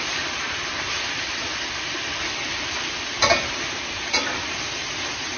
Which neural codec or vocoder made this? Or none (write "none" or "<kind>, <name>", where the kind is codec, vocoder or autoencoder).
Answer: vocoder, BigVGAN v2